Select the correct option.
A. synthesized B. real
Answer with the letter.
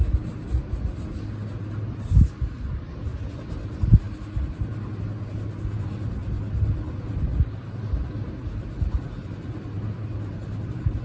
B